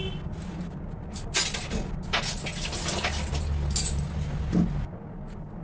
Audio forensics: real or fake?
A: real